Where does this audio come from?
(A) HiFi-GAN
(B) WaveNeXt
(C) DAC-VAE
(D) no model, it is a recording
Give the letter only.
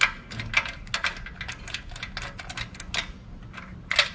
D